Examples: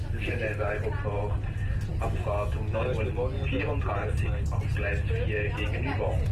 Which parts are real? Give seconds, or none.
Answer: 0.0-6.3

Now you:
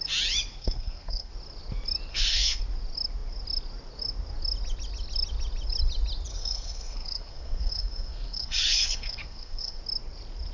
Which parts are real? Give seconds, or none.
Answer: 0.0-0.5; 1.3-2.1; 2.6-6.3; 9.8-10.5

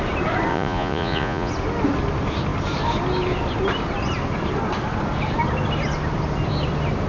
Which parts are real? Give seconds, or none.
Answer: 0.0-0.5; 1.5-7.1

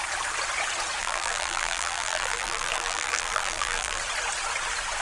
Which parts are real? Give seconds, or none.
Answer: 0.0-1.0; 4.0-5.0

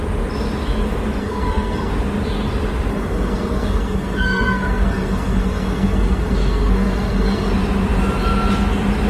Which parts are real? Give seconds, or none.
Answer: 0.0-1.2; 1.9-2.9; 7.5-9.1